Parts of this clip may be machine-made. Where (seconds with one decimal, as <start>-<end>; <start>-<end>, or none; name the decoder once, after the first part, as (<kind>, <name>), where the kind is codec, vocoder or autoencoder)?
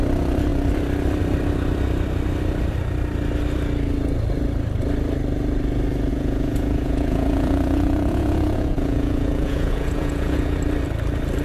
6.1-10.6 (vocoder, Vocos)